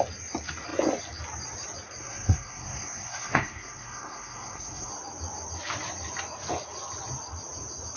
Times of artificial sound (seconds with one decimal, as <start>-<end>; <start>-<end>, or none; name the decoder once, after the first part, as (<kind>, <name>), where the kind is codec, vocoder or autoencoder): 2.0-4.9 (codec, SNAC)